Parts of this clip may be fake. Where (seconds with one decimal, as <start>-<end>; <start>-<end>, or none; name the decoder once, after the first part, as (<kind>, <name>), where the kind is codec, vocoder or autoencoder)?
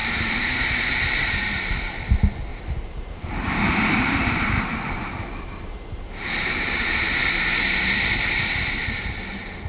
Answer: 0.0-0.6 (vocoder, BigVGAN v2); 2.5-7.2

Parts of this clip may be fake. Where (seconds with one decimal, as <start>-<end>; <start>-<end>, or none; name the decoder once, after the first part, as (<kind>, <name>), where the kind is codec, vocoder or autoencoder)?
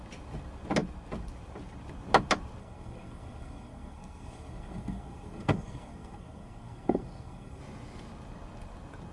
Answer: 2.6-7.6 (codec, SNAC)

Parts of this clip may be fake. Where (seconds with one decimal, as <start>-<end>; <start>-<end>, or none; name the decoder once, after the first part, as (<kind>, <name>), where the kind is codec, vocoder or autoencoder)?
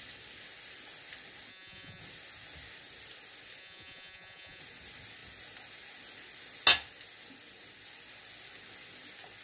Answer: 1.5-2.0 (vocoder, Vocos); 3.6-4.6